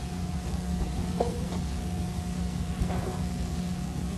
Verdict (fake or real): fake